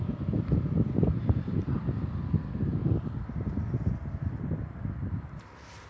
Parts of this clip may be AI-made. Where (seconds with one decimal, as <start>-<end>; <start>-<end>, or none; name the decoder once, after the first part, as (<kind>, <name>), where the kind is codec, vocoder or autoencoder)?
none